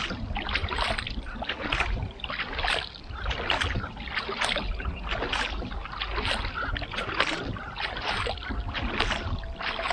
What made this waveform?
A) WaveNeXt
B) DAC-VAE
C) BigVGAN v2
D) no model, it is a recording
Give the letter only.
D